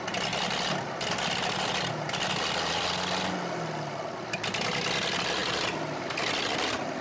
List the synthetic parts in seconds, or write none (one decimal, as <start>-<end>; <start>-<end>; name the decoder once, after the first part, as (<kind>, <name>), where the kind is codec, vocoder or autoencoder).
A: none